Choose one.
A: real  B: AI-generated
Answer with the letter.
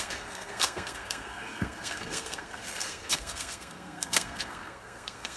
B